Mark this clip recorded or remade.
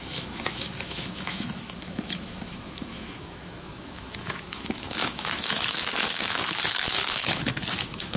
remade